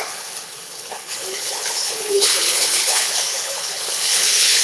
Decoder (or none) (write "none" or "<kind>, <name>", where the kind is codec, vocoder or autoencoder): codec, HILCodec